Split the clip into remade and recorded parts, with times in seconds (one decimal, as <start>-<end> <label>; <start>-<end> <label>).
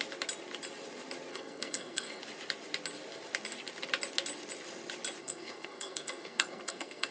0.0-1.3 recorded; 1.3-2.2 remade; 2.2-5.2 recorded; 5.2-7.1 remade